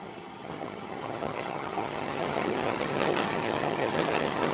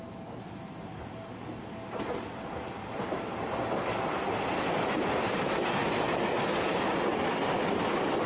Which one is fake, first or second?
first